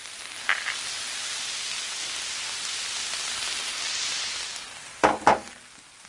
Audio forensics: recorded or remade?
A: recorded